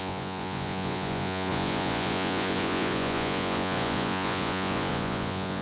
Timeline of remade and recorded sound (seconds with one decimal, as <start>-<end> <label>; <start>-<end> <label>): 0.0-5.6 remade